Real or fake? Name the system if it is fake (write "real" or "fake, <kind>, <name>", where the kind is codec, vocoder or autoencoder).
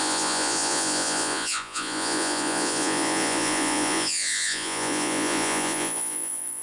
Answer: fake, vocoder, Vocos